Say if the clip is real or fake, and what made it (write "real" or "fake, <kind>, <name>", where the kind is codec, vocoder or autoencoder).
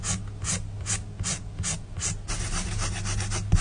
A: real